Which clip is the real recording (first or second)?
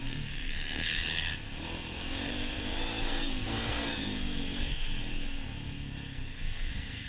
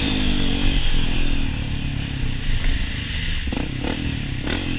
second